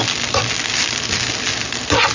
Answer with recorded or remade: recorded